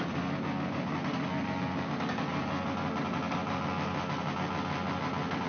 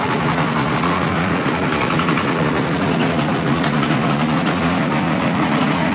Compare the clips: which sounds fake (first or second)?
second